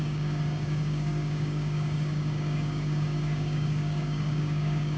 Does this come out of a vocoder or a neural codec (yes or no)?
yes